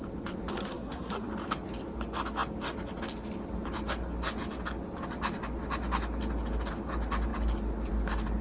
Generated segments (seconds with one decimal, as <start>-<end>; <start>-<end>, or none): 0.5-1.3